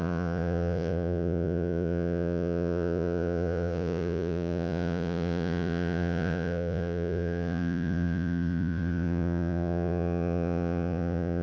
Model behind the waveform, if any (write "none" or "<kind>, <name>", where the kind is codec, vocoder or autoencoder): vocoder, Vocos